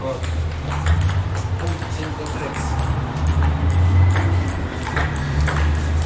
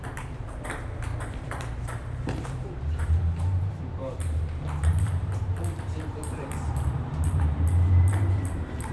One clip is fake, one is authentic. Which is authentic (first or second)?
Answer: first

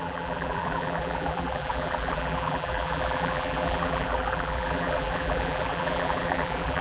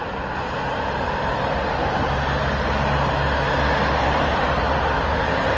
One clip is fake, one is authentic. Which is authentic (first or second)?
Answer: second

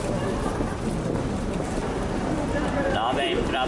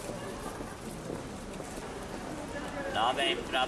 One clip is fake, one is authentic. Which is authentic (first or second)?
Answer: second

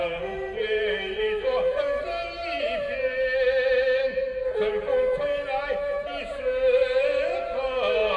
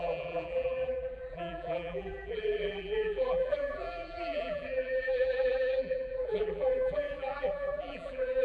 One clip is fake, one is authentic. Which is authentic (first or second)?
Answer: first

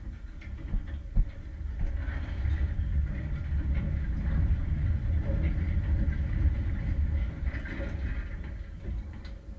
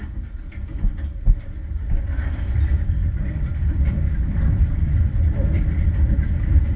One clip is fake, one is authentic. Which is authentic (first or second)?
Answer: first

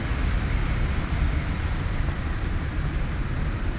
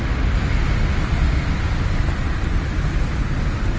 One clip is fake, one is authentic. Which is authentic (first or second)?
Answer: second